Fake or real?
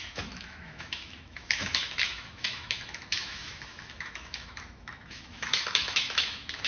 fake